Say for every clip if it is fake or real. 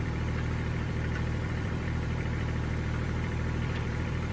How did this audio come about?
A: fake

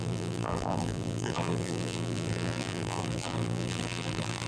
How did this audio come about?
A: fake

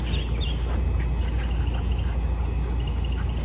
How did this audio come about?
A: real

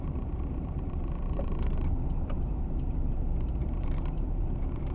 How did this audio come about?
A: fake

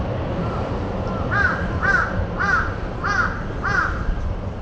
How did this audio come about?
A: fake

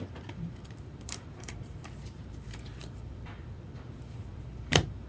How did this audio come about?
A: fake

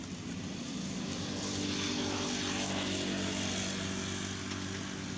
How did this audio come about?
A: real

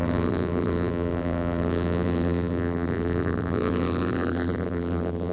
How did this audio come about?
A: fake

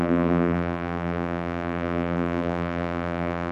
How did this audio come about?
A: fake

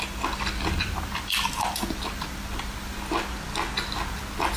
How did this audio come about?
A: real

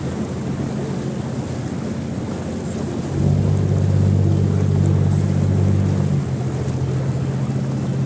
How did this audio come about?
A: real